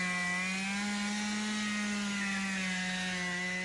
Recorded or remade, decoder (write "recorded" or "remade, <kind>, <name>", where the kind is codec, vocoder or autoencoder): recorded